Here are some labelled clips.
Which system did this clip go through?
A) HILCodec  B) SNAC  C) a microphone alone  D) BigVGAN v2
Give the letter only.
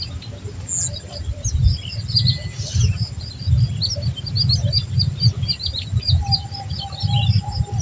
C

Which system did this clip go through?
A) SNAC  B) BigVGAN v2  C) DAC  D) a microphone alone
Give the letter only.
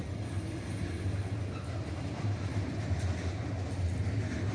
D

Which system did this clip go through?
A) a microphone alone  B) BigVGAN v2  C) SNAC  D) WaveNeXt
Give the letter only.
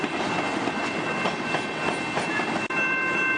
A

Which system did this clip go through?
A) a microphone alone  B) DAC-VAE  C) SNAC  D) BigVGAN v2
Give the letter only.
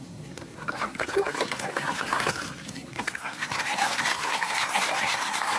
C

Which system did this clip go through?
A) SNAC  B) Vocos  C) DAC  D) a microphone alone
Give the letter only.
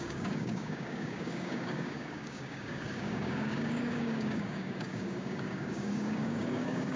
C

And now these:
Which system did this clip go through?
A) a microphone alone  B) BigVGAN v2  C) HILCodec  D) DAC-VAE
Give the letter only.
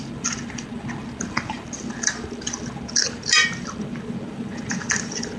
B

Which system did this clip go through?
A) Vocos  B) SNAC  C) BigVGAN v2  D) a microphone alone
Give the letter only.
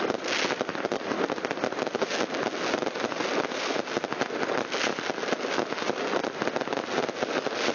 D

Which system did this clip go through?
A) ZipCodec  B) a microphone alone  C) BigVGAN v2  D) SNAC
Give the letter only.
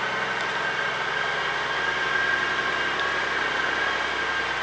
B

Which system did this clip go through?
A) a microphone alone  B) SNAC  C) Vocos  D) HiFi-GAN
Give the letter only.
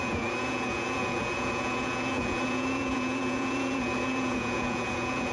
C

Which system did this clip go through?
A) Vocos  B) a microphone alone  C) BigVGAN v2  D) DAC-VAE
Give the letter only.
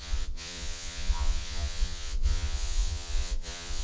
A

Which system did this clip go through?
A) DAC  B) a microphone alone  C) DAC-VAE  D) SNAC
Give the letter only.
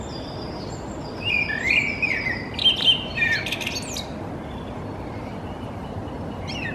B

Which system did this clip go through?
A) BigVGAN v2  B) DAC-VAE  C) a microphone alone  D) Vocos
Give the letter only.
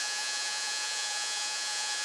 D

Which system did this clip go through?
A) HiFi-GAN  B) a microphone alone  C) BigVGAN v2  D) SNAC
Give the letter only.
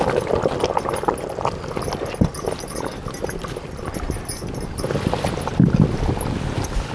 B